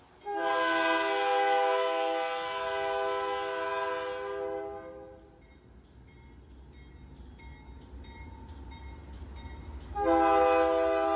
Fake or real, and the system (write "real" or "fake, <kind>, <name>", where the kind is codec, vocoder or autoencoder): real